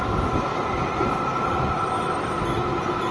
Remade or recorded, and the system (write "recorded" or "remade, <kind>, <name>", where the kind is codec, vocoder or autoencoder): recorded